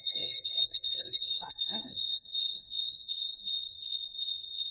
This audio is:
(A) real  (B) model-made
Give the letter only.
B